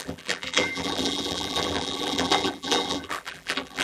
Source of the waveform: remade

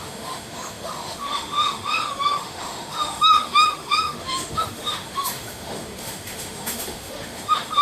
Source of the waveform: remade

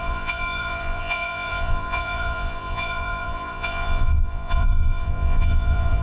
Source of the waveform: remade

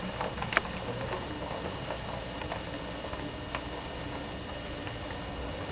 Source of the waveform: recorded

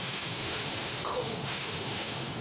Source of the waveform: remade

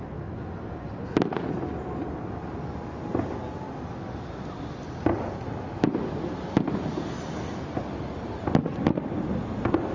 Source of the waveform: recorded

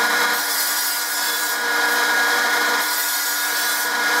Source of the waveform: remade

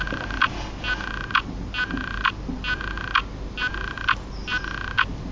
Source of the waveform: recorded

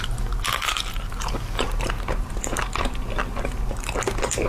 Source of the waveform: recorded